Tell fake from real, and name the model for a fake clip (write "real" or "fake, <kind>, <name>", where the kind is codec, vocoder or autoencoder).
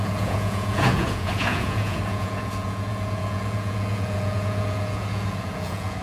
fake, vocoder, Vocos